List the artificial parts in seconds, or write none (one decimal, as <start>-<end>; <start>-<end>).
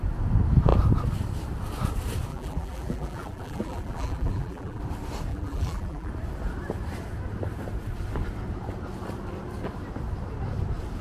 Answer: 2.3-4.8; 5.3-6.1